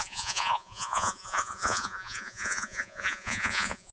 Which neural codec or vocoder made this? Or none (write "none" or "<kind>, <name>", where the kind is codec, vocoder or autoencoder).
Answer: vocoder, Vocos